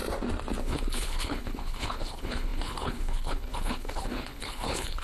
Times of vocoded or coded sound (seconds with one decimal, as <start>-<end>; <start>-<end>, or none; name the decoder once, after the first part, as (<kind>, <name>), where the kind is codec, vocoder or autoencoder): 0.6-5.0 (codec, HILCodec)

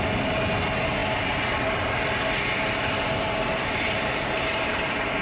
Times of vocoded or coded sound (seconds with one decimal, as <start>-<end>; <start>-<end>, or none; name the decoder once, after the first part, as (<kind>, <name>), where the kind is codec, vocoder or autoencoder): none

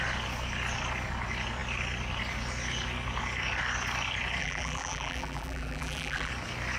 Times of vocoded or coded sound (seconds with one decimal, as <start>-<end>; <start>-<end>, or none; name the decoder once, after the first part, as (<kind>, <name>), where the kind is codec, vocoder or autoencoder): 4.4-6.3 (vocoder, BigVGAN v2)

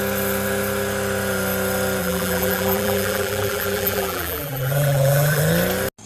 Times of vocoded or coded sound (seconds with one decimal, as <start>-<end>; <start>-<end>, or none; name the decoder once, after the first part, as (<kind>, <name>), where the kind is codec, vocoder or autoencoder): 2.0-5.4 (vocoder, BigVGAN v2)

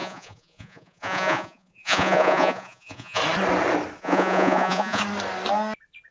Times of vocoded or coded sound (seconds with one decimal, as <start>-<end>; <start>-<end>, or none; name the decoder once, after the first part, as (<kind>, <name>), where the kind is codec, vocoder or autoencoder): 0.0-3.2 (vocoder, Vocos); 4.0-5.0

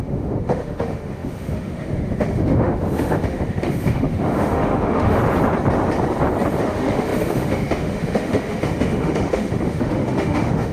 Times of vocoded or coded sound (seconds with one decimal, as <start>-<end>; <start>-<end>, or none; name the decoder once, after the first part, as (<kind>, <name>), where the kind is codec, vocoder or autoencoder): 0.0-5.2 (autoencoder, DAC-VAE); 6.6-10.7